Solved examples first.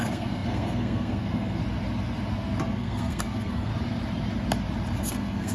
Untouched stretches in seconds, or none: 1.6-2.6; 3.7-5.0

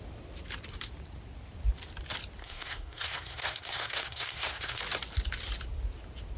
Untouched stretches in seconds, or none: 0.0-2.4; 4.8-6.4

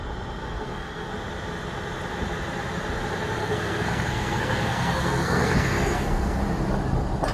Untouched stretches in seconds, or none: 0.0-0.4; 1.1-3.4; 6.4-7.3

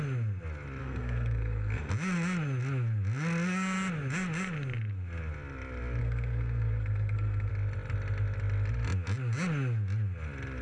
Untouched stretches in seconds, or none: 0.0-0.8; 1.9-6.0; 7.5-10.6

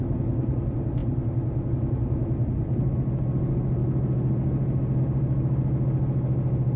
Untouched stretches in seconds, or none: 0.0-6.8